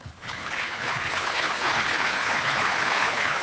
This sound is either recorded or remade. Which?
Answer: remade